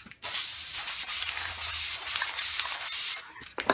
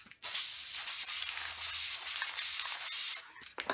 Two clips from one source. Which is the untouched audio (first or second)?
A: second